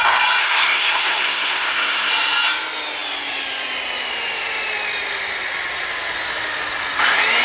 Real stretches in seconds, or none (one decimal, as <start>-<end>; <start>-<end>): 0.0-0.4; 2.1-7.4